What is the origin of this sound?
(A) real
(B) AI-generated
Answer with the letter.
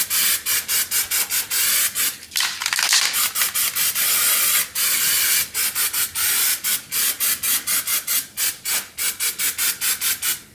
A